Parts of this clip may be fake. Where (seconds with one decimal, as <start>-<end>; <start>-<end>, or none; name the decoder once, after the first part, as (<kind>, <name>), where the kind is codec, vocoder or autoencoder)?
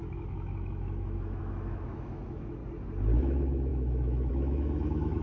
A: 0.0-2.6 (autoencoder, DAC-VAE); 3.2-5.2